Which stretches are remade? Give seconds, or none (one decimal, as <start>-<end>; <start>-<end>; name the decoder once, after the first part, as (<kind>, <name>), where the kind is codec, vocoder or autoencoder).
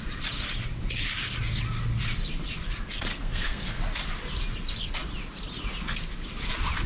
3.1-3.8 (codec, SNAC)